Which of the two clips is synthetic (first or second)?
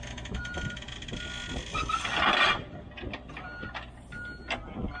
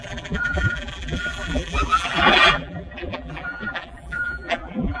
second